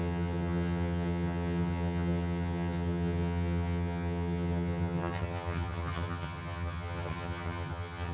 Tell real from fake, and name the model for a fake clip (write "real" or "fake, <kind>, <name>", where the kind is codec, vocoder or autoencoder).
fake, vocoder, HiFi-GAN